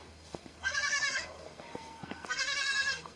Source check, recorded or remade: remade